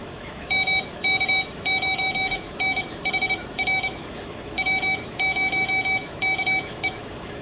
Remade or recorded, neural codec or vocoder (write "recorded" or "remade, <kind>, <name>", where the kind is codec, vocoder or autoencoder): remade, autoencoder, DAC-VAE